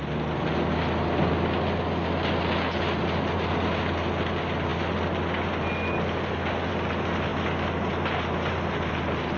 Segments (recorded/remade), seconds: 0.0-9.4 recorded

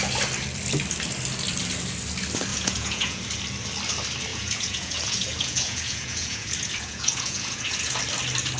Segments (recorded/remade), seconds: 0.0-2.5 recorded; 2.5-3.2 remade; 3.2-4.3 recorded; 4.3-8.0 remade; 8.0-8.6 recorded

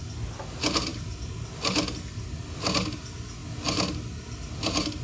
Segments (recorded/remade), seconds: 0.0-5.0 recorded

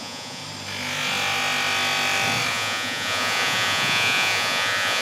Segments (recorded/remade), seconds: 0.0-0.4 remade; 0.4-2.5 recorded; 2.5-5.0 remade

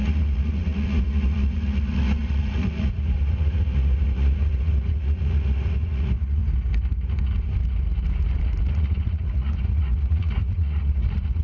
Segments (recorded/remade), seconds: 0.0-6.4 remade; 6.4-8.7 recorded; 8.7-11.4 remade